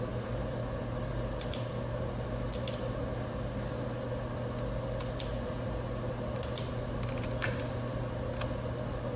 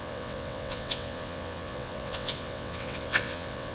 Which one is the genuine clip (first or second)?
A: first